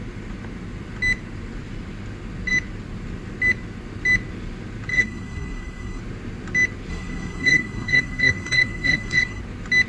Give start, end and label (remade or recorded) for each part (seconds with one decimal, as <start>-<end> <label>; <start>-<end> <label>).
0.0-4.9 recorded; 4.9-6.0 remade; 6.0-6.9 recorded; 6.9-9.4 remade; 9.4-9.9 recorded